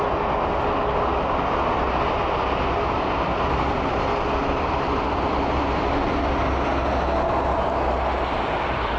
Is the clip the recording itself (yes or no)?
yes